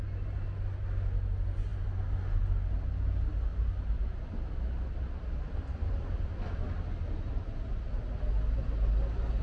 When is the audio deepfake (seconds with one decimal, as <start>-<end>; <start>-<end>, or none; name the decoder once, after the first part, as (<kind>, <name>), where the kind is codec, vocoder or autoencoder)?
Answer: none